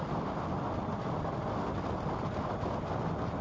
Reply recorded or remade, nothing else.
recorded